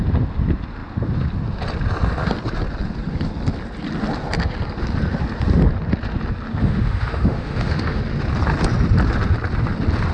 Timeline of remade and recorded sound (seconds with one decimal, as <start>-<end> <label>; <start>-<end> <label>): 0.0-6.6 recorded; 6.6-8.0 remade; 8.0-10.1 recorded